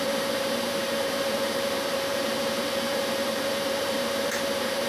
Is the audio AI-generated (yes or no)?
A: yes